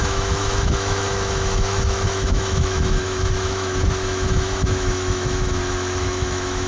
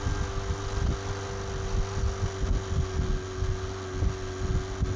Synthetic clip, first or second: first